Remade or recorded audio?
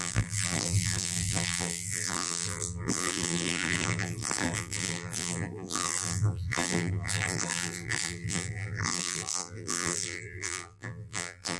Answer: remade